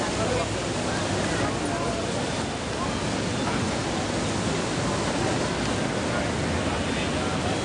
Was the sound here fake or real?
real